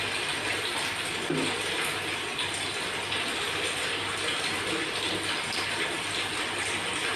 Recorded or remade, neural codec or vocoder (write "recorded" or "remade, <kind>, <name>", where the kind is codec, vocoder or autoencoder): recorded